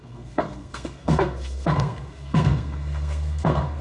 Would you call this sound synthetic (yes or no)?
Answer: yes